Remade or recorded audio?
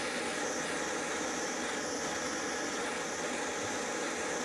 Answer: recorded